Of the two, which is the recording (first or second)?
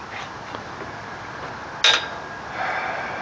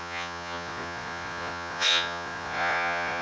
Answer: first